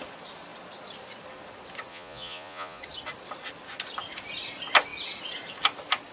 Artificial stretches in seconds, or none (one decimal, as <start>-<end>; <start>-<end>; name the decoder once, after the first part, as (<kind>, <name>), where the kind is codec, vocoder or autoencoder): 1.9-2.8 (vocoder, Vocos)